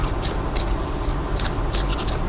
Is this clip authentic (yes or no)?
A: yes